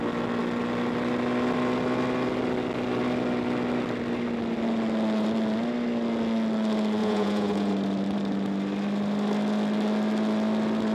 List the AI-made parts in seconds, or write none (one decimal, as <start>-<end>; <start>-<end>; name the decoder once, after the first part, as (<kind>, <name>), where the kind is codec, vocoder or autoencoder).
7.0-7.7 (vocoder, Vocos)